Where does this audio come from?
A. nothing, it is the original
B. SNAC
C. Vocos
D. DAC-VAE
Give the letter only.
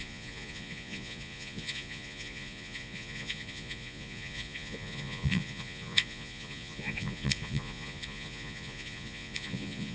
C